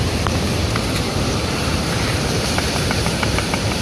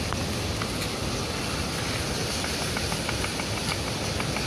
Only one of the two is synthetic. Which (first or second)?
first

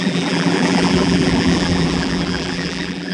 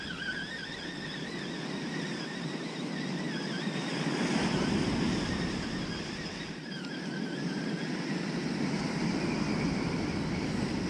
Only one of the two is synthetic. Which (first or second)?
first